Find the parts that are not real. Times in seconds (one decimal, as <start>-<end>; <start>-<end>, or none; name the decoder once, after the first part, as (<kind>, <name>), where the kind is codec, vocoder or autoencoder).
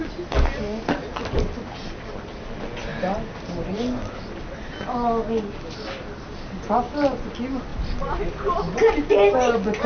none